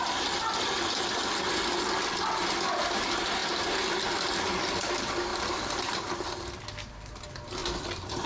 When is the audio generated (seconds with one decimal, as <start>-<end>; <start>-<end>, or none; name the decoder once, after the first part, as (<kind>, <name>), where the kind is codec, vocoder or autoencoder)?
5.3-6.6 (vocoder, BigVGAN v2); 7.6-8.3